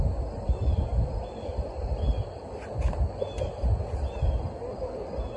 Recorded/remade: remade